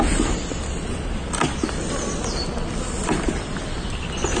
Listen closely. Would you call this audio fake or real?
real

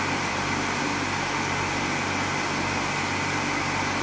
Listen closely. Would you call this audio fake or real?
real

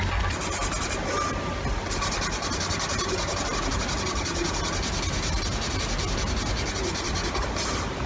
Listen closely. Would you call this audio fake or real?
real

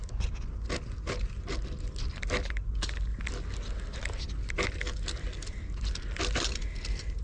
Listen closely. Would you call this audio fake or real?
real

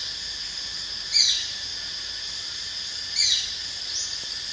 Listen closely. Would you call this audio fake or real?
real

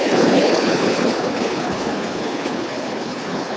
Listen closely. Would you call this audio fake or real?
fake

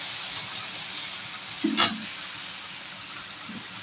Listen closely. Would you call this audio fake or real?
real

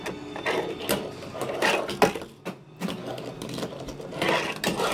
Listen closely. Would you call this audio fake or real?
real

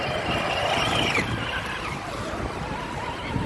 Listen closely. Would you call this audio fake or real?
real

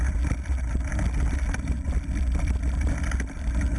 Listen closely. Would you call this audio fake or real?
real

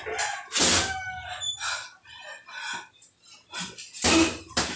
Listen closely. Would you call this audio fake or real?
real